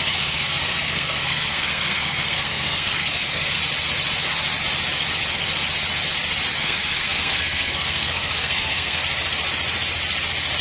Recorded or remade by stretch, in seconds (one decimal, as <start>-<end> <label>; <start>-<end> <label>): 0.0-3.6 remade; 3.6-6.6 recorded; 6.6-9.0 remade; 9.0-10.6 recorded

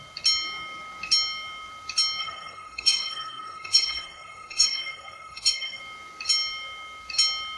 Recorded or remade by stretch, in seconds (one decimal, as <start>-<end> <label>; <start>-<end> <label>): 0.0-2.2 recorded; 2.2-5.8 remade; 5.8-7.6 recorded

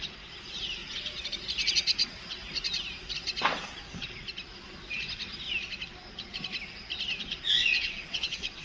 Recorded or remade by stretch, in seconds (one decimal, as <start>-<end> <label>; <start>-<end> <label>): 0.0-7.6 recorded; 7.6-8.6 remade

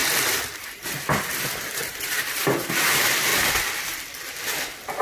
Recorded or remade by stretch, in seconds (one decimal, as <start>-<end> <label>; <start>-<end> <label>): 0.0-2.7 remade; 2.7-3.3 recorded; 3.3-4.2 remade; 4.2-5.0 recorded